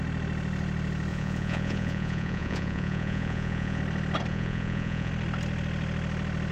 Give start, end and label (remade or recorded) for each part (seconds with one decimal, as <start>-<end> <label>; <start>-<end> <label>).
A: 0.0-1.1 recorded; 1.1-3.8 remade; 3.8-4.3 recorded; 4.3-5.1 remade; 5.1-6.5 recorded